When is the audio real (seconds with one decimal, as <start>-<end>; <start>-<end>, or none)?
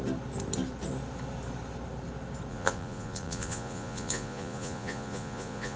0.0-2.5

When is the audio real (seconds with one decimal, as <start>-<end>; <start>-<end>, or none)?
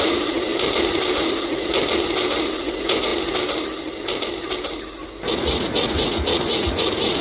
0.5-1.2; 1.8-2.6; 3.1-5.3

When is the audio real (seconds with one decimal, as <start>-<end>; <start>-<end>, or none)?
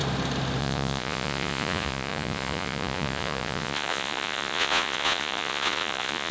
0.0-0.6